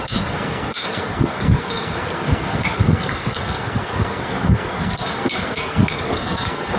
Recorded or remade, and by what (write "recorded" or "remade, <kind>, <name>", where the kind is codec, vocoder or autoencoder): remade, codec, SNAC